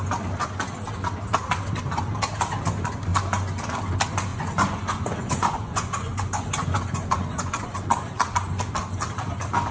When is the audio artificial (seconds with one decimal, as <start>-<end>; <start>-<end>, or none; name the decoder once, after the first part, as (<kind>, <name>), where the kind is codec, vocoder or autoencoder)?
4.3-7.8 (vocoder, Vocos)